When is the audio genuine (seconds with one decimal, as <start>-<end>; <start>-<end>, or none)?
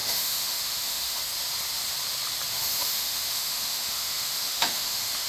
1.2-2.5